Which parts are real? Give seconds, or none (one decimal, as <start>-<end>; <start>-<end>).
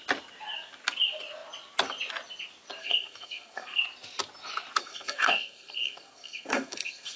0.0-2.8; 3.8-4.8